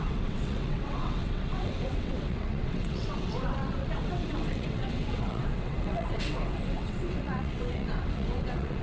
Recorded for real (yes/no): no